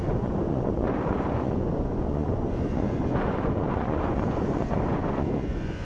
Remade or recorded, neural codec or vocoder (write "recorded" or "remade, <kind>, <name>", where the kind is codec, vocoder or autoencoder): remade, vocoder, Vocos